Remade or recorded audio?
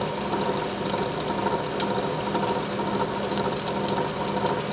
recorded